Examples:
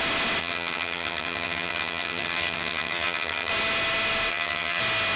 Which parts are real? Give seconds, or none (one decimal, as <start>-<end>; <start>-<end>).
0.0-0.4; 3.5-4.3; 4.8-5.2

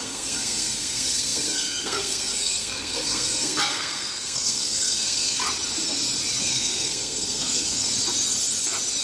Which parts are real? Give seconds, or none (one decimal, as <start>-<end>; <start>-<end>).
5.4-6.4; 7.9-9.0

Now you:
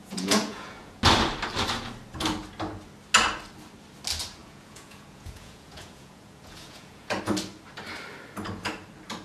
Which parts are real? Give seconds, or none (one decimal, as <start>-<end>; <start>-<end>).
1.0-4.4; 7.2-9.2